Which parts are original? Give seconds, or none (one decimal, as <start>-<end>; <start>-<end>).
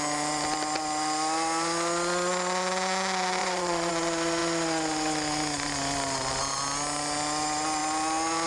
0.0-3.4; 3.9-8.5